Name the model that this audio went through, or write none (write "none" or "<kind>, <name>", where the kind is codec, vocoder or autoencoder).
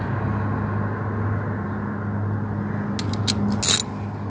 none